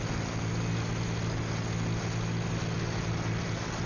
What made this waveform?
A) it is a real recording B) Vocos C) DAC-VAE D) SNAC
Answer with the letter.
A